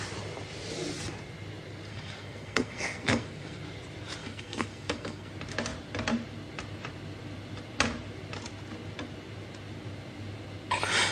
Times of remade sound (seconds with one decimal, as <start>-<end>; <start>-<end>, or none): 1.9-3.6; 4.2-5.3